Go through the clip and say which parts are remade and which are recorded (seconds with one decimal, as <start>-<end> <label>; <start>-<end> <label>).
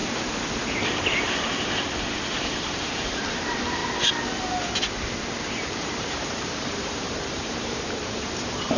0.0-2.3 recorded; 2.3-3.8 remade; 3.8-5.4 recorded; 5.4-8.8 remade